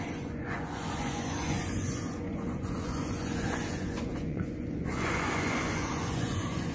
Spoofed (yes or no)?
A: yes